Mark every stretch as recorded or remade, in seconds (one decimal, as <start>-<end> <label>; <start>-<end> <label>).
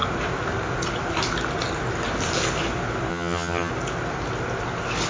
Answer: 0.0-3.1 recorded; 3.1-3.7 remade; 3.7-5.1 recorded